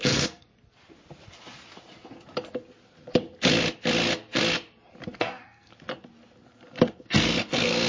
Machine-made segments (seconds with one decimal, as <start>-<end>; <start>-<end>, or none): 0.0-0.5; 5.2-5.7; 6.9-7.9